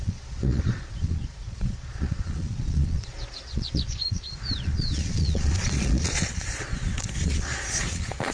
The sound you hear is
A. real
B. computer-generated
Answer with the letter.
B